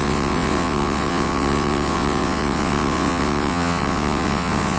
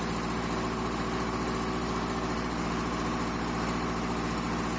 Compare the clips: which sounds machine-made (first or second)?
first